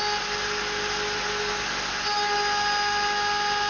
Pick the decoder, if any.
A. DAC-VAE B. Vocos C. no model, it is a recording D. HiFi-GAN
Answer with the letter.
C